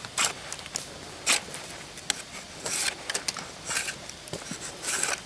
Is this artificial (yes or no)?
no